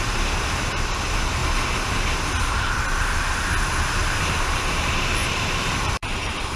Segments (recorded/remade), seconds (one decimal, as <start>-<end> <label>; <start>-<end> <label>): 0.0-1.4 remade; 1.4-4.0 recorded; 4.0-6.6 remade

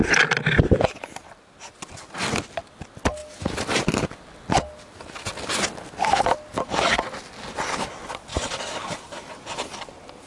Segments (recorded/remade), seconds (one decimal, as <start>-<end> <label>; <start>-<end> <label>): 0.0-8.3 recorded; 8.3-9.8 remade; 9.8-10.3 recorded

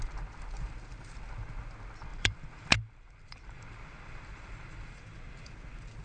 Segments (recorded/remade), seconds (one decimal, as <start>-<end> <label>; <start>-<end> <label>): 0.0-2.1 recorded; 2.1-5.5 remade; 5.5-6.0 recorded

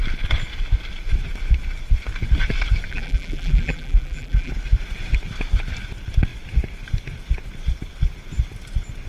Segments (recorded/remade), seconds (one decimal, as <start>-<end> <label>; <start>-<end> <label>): 0.0-2.9 recorded; 2.9-4.5 remade; 4.5-9.1 recorded

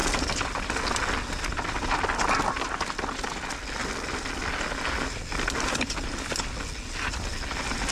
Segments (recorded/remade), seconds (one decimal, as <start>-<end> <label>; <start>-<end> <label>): 0.0-7.9 recorded